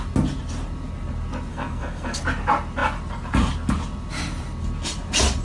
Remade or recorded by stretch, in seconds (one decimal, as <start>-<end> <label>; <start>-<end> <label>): 0.0-1.5 recorded; 1.5-2.2 remade; 2.2-5.4 recorded